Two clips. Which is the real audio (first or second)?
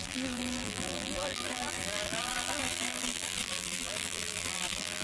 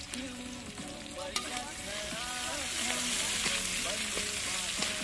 second